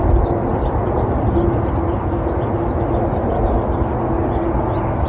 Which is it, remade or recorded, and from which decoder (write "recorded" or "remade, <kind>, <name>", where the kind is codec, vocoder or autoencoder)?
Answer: recorded